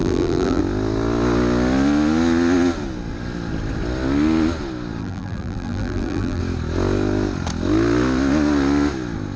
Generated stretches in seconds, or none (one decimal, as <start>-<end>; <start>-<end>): 0.0-0.6; 5.0-6.4